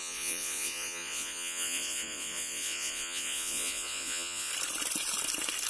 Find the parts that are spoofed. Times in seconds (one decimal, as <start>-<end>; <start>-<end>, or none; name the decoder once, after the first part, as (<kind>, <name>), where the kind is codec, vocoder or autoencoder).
0.0-4.5 (vocoder, Vocos)